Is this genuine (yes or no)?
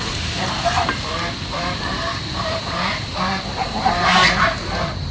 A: no